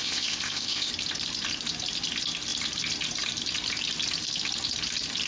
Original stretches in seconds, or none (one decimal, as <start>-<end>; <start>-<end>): 0.9-5.3